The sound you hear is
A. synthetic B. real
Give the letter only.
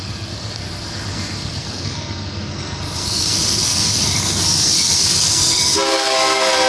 A